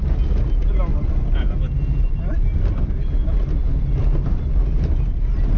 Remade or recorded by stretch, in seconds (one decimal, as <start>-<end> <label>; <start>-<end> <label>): 0.0-5.6 recorded